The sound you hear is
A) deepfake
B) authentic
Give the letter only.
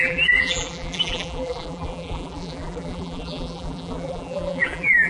A